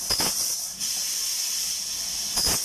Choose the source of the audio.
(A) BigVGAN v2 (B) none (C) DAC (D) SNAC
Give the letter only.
B